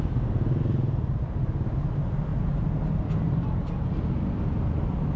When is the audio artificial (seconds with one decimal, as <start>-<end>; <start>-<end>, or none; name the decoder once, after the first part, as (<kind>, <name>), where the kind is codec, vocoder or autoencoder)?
none